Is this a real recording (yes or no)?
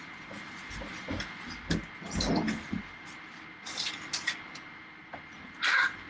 yes